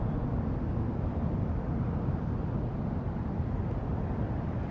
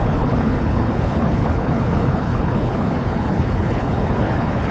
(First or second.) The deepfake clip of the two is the second